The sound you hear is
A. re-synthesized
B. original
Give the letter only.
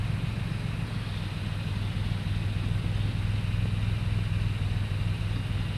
B